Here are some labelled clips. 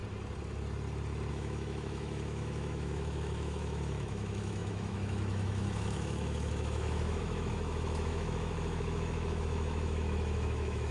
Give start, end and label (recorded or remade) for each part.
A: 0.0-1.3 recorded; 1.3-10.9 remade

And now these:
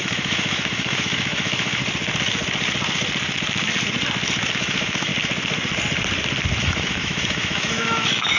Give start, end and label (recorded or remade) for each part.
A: 0.0-1.8 remade; 1.8-4.5 recorded; 4.5-5.1 remade; 5.1-6.6 recorded; 6.6-8.4 remade

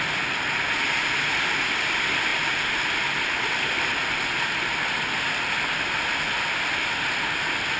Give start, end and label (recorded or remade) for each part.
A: 0.0-7.8 recorded

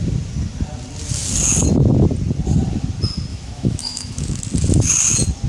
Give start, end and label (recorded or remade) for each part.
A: 0.0-3.3 recorded; 3.3-4.4 remade; 4.4-5.5 recorded

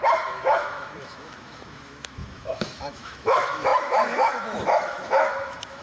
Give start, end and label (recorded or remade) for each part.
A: 0.0-5.8 remade

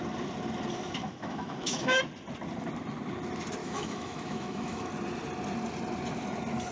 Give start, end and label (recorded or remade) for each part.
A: 0.0-1.0 recorded; 1.0-2.0 remade; 2.0-3.6 recorded; 3.6-4.9 remade; 4.9-6.7 recorded

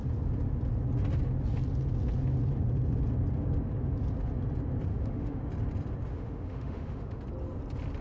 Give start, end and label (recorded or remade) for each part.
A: 0.0-4.9 recorded; 4.9-5.4 remade; 5.4-6.1 recorded; 6.1-7.2 remade; 7.2-8.0 recorded

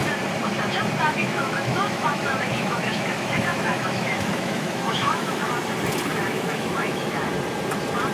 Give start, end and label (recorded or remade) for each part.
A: 0.0-1.2 recorded; 1.2-5.5 remade; 5.5-6.1 recorded; 6.1-7.2 remade; 7.2-8.1 recorded